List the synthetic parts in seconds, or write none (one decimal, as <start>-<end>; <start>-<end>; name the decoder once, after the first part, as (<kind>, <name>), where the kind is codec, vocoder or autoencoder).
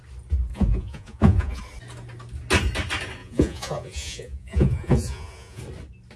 0.5-1.6 (vocoder, Vocos); 3.2-5.6